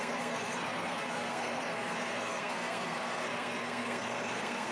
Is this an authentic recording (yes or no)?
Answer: no